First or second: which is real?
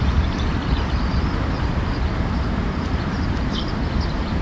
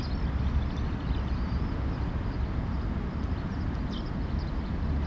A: second